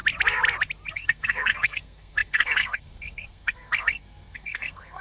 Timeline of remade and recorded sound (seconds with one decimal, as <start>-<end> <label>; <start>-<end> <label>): 0.0-0.9 recorded; 0.9-5.0 remade